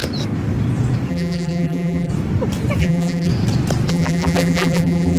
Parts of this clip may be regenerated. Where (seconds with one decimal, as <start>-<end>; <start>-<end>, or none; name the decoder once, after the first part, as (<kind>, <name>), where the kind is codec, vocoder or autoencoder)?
1.1-2.1 (vocoder, BigVGAN v2); 2.8-3.3; 3.9-5.2